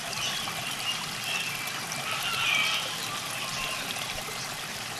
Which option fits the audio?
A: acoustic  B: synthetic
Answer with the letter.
B